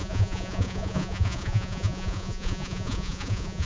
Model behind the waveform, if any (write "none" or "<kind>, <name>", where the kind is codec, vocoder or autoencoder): vocoder, Vocos